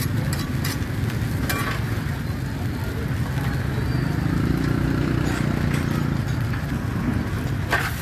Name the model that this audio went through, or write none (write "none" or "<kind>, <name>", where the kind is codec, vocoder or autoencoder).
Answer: none